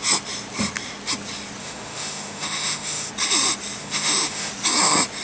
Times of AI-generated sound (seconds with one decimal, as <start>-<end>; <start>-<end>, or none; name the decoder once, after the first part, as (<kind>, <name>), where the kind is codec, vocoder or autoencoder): 1.6-3.1 (autoencoder, DAC-VAE); 3.8-4.5